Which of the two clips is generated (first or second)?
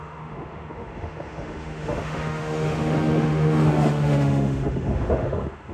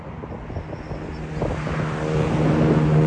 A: first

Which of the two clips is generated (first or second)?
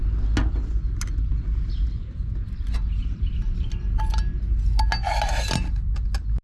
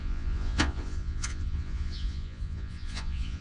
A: second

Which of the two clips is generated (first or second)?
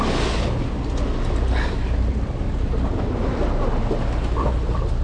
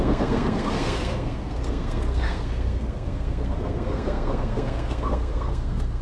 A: second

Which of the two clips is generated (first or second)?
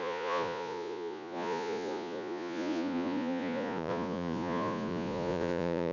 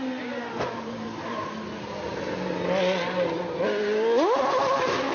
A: first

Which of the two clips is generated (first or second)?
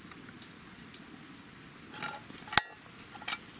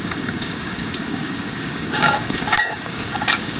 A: second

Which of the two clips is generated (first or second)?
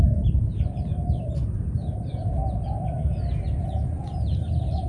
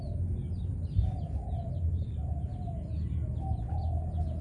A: first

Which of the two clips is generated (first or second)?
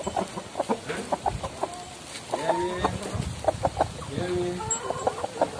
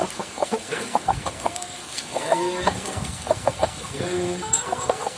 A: second